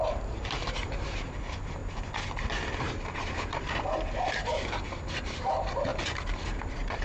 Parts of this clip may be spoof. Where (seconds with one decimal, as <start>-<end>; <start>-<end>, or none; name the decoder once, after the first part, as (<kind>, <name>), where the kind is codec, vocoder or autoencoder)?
0.0-1.8 (vocoder, BigVGAN v2); 2.8-7.0